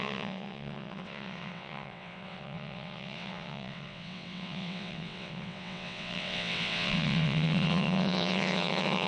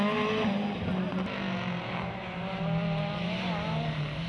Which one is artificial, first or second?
first